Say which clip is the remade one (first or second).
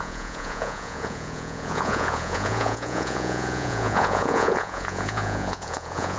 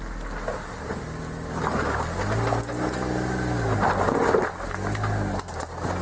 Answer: first